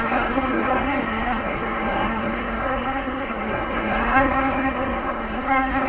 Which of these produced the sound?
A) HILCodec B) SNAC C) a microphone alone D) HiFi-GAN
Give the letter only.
B